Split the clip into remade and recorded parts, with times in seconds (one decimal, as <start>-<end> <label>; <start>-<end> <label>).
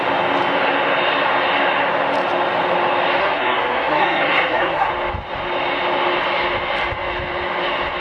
0.0-3.2 recorded; 3.2-4.9 remade; 4.9-8.0 recorded